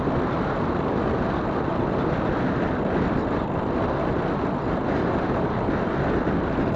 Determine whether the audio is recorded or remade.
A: recorded